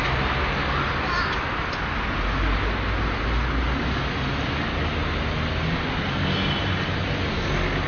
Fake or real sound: real